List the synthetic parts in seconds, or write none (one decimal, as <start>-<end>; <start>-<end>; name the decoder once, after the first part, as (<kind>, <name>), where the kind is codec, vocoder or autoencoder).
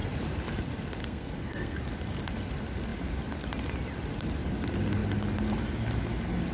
1.0-1.8 (codec, SNAC)